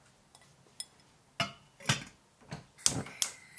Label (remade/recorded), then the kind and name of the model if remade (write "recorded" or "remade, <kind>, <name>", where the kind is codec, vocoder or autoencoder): recorded